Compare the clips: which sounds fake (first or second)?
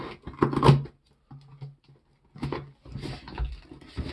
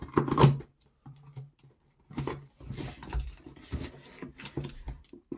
second